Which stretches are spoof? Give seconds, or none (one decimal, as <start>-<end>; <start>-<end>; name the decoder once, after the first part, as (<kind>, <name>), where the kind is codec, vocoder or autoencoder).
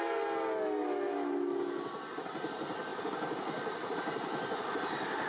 2.9-5.3 (vocoder, BigVGAN v2)